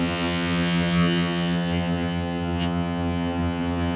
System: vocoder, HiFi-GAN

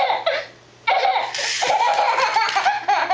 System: none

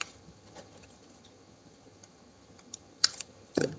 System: vocoder, HiFi-GAN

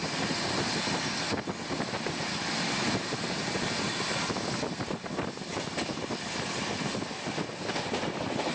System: none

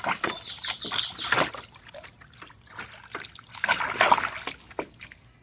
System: none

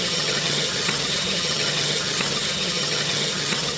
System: vocoder, HiFi-GAN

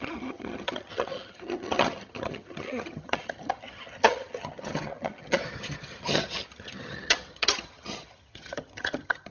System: vocoder, HiFi-GAN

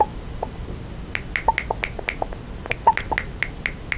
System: none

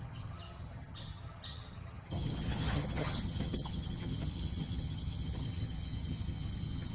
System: vocoder, HiFi-GAN